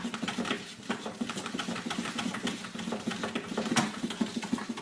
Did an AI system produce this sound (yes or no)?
no